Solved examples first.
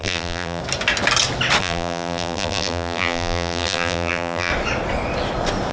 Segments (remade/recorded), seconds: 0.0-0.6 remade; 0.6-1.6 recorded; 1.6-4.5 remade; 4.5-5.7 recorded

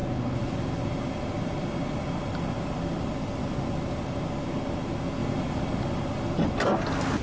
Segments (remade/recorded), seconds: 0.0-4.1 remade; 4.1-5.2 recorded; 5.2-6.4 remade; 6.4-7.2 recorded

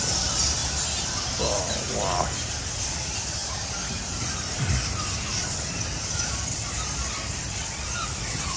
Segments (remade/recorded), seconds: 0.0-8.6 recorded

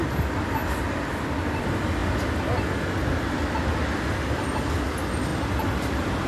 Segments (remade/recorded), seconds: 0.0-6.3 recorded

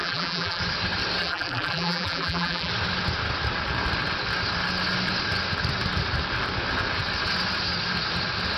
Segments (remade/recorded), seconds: 0.0-0.6 remade; 0.6-1.2 recorded; 1.2-2.7 remade; 2.7-8.6 recorded

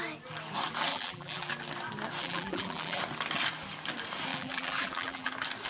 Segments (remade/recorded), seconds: 0.0-0.9 recorded; 0.9-1.5 remade; 1.5-2.2 recorded; 2.2-3.0 remade; 3.0-4.3 recorded; 4.3-5.3 remade; 5.3-5.7 recorded

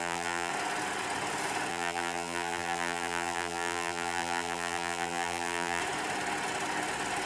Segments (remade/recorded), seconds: 0.0-0.5 remade; 0.5-1.7 recorded; 1.7-5.8 remade; 5.8-7.3 recorded

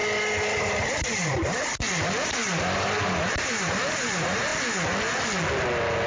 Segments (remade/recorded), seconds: 0.0-0.6 recorded; 0.6-1.7 remade; 1.7-2.2 recorded; 2.2-4.5 remade; 4.5-6.1 recorded